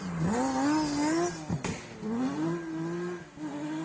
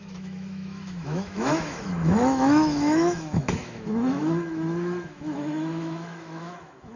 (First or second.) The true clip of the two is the first